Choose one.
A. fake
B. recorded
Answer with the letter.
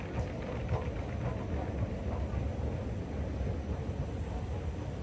B